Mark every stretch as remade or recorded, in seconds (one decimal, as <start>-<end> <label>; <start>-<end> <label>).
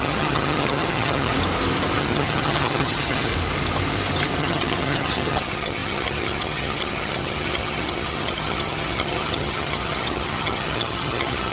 0.0-1.3 remade; 1.3-2.0 recorded; 2.0-3.3 remade; 3.3-4.4 recorded; 4.4-11.5 remade